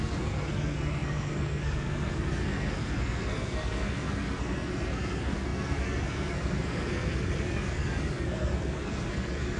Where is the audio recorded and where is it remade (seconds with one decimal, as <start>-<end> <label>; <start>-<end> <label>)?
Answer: 0.0-9.6 remade